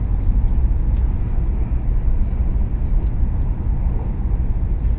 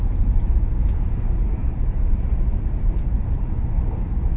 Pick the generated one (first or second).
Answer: second